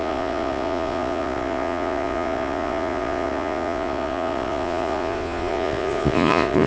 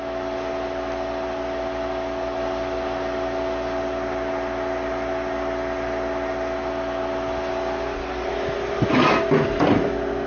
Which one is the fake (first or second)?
first